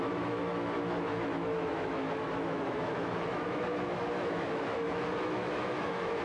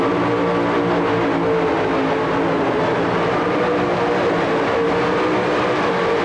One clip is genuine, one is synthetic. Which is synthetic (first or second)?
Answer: first